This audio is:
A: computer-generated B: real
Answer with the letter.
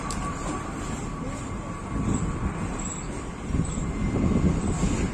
B